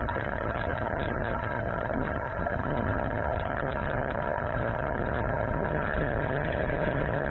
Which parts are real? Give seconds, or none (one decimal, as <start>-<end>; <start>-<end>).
none